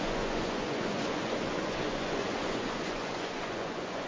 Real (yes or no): no